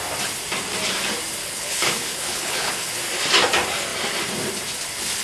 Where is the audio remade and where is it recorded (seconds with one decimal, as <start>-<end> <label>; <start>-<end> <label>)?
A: 0.0-1.4 recorded; 1.4-3.0 remade; 3.0-5.2 recorded